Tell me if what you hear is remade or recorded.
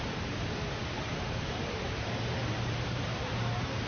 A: remade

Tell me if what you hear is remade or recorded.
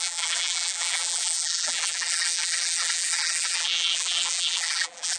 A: remade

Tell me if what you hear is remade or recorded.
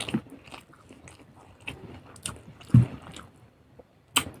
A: recorded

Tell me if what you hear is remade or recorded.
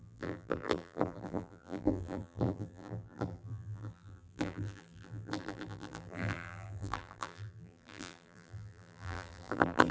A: remade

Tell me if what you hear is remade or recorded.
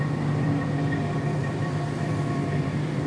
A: remade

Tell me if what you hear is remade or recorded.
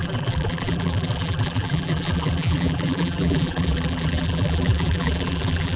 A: remade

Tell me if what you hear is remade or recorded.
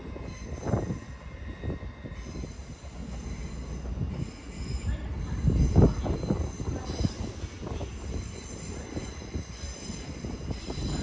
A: recorded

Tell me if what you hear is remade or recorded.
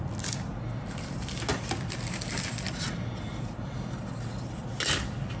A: recorded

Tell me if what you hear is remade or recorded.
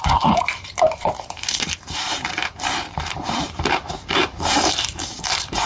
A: remade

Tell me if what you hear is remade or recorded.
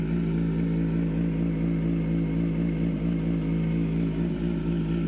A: recorded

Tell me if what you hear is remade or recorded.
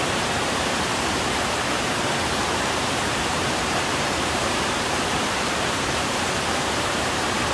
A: remade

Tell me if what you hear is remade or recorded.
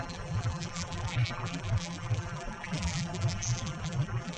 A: remade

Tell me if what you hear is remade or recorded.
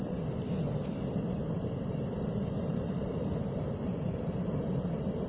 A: remade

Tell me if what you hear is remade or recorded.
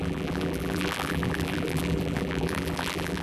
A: remade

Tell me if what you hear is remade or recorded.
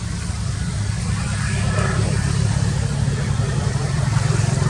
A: remade